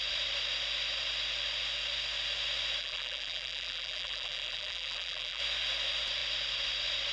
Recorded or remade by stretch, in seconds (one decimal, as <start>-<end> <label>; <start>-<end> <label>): 0.0-2.8 recorded; 2.8-5.4 remade; 5.4-7.1 recorded

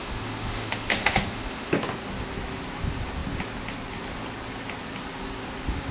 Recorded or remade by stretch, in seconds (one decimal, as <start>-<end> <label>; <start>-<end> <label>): 0.0-1.7 remade; 1.7-5.9 recorded

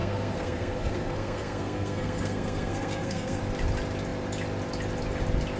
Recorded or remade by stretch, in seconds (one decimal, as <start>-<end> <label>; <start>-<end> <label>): 0.0-3.4 remade; 3.4-5.6 recorded

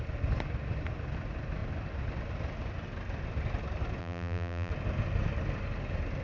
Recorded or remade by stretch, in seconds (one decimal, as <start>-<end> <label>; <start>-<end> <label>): 0.0-4.0 recorded; 4.0-4.7 remade; 4.7-6.2 recorded

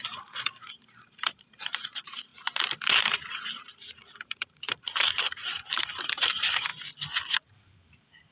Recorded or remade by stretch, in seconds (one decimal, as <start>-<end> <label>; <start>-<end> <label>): 0.0-2.3 remade; 2.3-3.0 recorded; 3.0-6.7 remade; 6.7-7.3 recorded; 7.3-8.3 remade